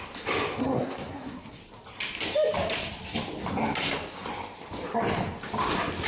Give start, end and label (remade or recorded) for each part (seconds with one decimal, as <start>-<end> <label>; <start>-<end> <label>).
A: 0.0-0.6 recorded; 0.6-1.6 remade; 1.6-6.1 recorded

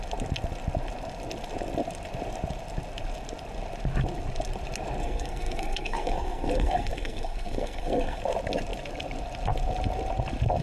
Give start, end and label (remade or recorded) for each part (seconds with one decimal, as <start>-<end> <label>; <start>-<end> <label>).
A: 0.0-5.0 recorded; 5.0-8.2 remade; 8.2-10.6 recorded

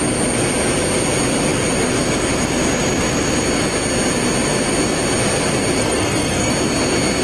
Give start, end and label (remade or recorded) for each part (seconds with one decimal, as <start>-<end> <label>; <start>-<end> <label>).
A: 0.0-5.8 recorded; 5.8-6.5 remade; 6.5-7.2 recorded

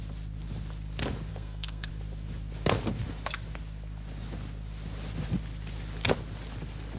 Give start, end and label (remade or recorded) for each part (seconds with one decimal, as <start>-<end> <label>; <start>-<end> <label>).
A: 0.0-1.3 recorded; 1.3-1.9 remade; 1.9-7.0 recorded

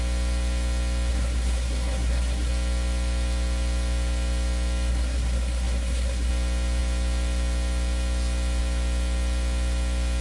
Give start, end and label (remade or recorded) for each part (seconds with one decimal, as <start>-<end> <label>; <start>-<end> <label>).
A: 0.0-1.1 recorded; 1.1-2.5 remade; 2.5-4.9 recorded; 4.9-6.3 remade; 6.3-10.2 recorded